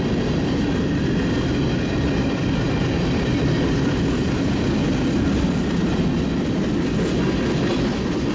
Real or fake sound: real